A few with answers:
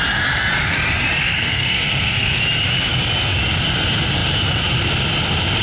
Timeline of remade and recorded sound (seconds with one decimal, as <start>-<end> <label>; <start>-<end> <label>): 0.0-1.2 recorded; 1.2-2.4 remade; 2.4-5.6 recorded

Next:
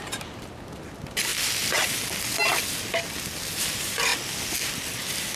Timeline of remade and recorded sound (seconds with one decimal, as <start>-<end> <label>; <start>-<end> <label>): 0.0-1.3 remade; 1.3-3.6 recorded; 3.6-4.1 remade; 4.1-5.4 recorded

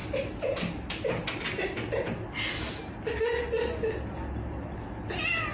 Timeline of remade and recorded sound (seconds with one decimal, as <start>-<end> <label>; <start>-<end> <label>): 0.0-5.5 recorded

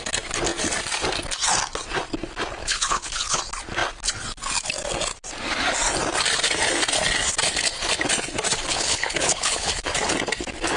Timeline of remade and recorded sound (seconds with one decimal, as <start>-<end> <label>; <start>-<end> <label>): 0.0-2.6 recorded; 2.6-3.4 remade; 3.4-8.7 recorded; 8.7-9.7 remade; 9.7-10.8 recorded

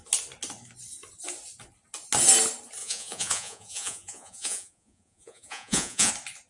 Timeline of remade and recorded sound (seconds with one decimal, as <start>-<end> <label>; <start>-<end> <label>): 0.0-2.8 recorded; 2.8-6.1 remade; 6.1-6.5 recorded

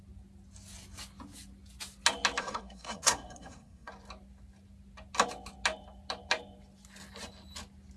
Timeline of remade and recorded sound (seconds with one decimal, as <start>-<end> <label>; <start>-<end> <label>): 0.0-2.4 recorded; 2.4-3.9 remade; 3.9-8.0 recorded

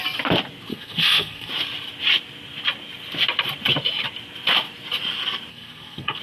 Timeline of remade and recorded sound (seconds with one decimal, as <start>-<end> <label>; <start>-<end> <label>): 0.0-0.7 recorded; 0.7-1.5 remade; 1.5-5.5 recorded; 5.5-6.2 remade

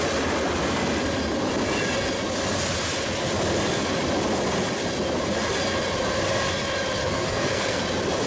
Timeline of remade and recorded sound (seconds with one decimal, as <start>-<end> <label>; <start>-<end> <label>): 0.0-7.0 recorded; 7.0-7.8 remade; 7.8-8.3 recorded